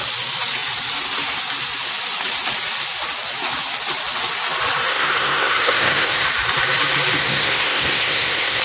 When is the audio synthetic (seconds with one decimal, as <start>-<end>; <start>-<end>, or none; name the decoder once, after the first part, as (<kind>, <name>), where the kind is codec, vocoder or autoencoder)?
4.9-6.3 (codec, SNAC); 7.2-8.6